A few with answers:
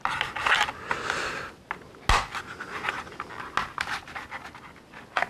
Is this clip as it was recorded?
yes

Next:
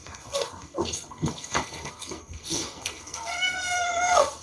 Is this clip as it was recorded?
no